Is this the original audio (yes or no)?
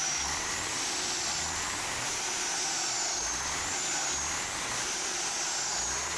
yes